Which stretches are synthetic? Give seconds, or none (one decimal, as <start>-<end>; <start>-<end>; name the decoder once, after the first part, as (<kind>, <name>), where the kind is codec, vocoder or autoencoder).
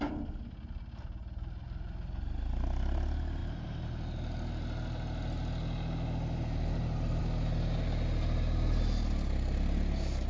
none